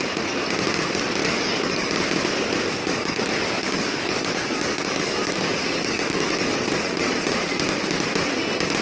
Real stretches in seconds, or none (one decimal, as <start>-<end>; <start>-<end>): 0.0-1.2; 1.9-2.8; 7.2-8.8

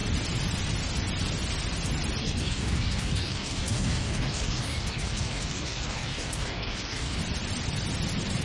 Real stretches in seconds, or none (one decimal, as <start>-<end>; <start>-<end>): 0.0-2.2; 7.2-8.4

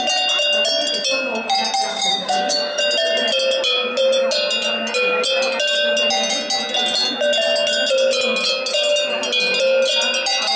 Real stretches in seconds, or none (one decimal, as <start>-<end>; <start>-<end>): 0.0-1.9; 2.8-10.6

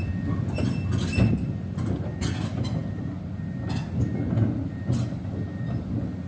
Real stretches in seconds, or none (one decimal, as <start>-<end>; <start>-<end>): 0.0-6.3

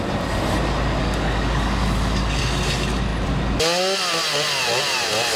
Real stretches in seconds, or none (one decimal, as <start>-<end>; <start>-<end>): 0.0-1.0; 2.4-5.4